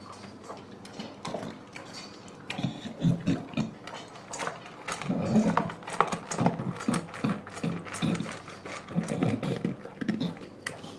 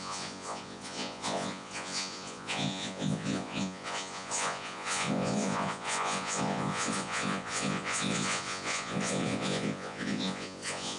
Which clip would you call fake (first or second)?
second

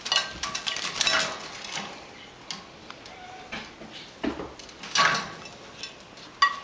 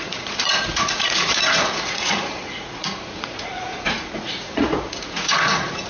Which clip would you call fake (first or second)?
second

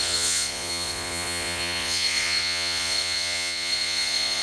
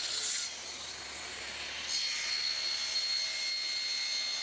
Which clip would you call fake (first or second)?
first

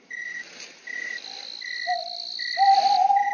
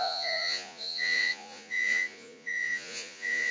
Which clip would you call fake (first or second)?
second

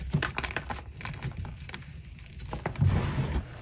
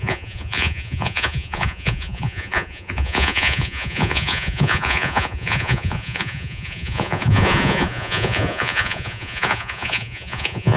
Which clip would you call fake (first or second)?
second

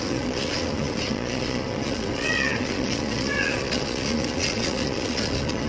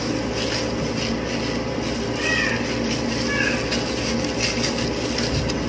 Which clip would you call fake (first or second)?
first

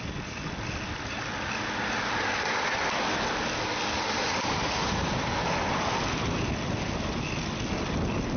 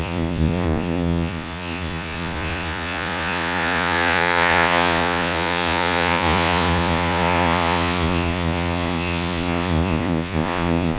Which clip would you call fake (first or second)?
second